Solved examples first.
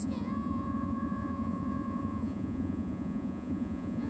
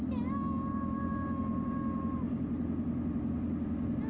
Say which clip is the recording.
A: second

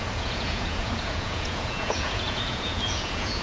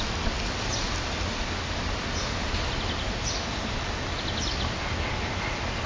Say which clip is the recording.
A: second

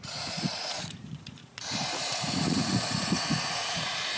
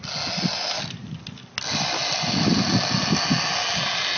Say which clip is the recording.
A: second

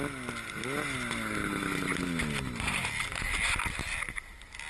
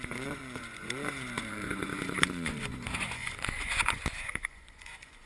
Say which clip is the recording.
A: first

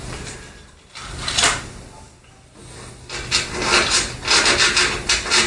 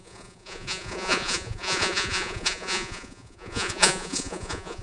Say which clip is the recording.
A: first